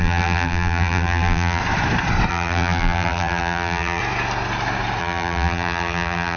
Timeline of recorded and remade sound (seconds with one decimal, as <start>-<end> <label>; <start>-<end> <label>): 0.0-1.6 remade; 1.6-2.3 recorded; 2.3-4.0 remade; 4.0-5.0 recorded; 5.0-6.4 remade